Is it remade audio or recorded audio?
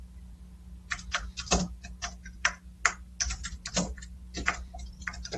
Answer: recorded